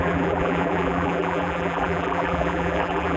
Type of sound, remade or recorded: remade